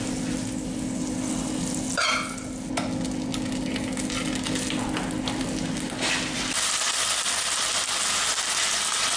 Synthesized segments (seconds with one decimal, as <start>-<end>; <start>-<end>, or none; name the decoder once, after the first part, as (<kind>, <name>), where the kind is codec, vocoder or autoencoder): none